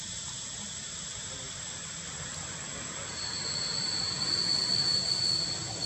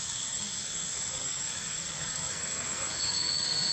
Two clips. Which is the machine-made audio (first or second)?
second